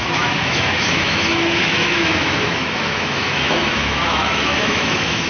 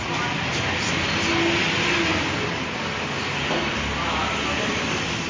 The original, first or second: second